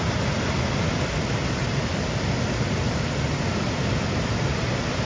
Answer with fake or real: real